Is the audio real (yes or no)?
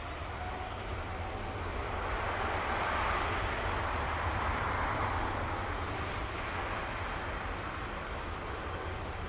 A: yes